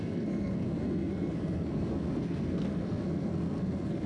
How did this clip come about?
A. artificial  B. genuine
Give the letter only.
A